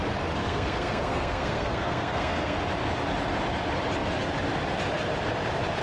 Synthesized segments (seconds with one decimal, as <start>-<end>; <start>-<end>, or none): 0.4-2.6